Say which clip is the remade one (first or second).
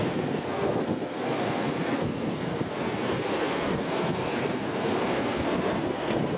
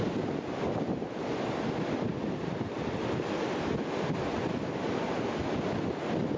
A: first